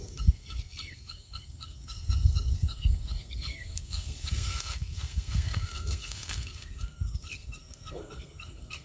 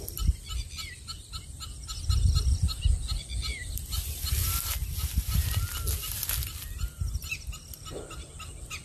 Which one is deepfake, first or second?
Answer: first